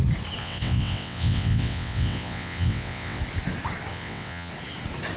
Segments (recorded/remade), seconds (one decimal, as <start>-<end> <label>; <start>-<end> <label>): 0.0-0.4 recorded; 0.4-3.2 remade; 3.2-3.9 recorded; 3.9-4.5 remade; 4.5-5.2 recorded